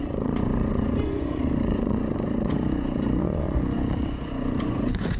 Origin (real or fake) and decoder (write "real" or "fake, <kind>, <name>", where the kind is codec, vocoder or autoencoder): fake, vocoder, Vocos